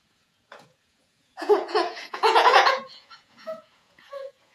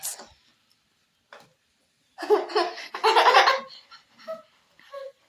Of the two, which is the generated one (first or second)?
first